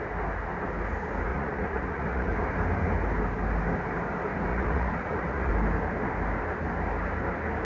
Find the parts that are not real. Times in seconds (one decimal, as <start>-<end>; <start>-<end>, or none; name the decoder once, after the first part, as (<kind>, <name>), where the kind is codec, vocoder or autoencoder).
1.3-2.3 (vocoder, Vocos); 4.5-5.5